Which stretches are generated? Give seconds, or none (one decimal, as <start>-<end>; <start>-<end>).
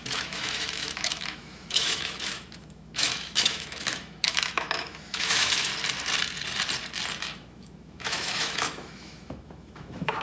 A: 0.0-5.7; 7.2-10.2